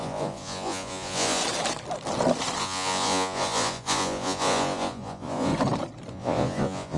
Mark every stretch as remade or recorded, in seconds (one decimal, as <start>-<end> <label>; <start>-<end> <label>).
0.0-1.4 remade; 1.4-2.6 recorded; 2.6-5.5 remade; 5.5-6.1 recorded; 6.1-7.0 remade